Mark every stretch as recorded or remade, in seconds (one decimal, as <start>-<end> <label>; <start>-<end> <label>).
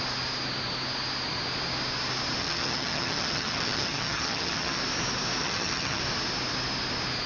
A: 0.0-2.4 recorded; 2.4-4.8 remade; 4.8-5.4 recorded; 5.4-6.0 remade; 6.0-7.3 recorded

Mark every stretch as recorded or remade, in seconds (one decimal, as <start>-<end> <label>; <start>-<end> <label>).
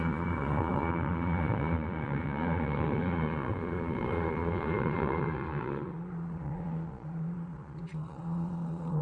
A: 0.0-9.0 remade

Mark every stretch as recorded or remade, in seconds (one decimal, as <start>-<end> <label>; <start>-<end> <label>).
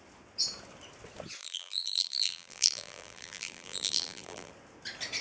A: 0.0-1.4 recorded; 1.4-4.5 remade; 4.5-5.2 recorded